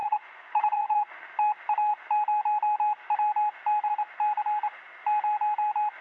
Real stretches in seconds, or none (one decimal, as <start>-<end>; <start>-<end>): 1.2-6.0